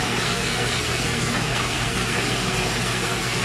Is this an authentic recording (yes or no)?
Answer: no